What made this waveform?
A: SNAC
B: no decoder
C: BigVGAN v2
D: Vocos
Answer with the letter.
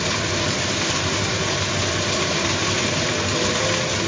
B